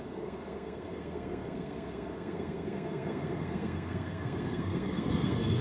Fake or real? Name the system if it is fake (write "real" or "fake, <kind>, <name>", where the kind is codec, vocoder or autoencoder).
fake, codec, SNAC